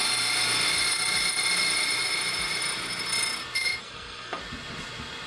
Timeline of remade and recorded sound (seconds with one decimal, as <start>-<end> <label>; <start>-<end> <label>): 0.0-3.8 recorded; 3.8-4.4 remade; 4.4-5.3 recorded